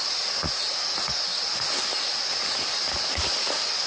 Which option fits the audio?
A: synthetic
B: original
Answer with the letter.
B